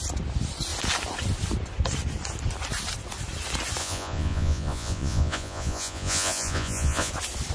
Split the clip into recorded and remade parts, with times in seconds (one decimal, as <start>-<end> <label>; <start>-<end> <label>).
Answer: 0.0-3.8 recorded; 3.8-7.1 remade; 7.1-7.5 recorded